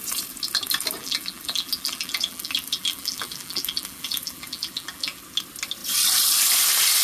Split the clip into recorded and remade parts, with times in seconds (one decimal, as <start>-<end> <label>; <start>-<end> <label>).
0.0-1.0 recorded; 1.0-5.2 remade; 5.2-7.0 recorded